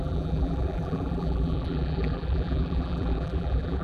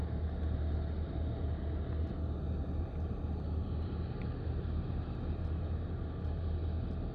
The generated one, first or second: first